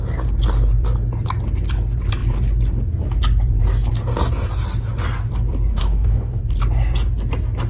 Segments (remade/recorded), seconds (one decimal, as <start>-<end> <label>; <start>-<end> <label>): 0.0-5.7 recorded; 5.7-6.4 remade; 6.4-7.7 recorded